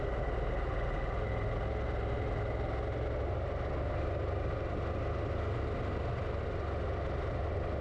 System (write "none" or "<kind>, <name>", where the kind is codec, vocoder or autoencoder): none